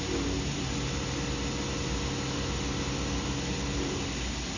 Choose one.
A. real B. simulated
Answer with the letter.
A